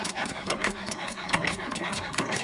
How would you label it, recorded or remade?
remade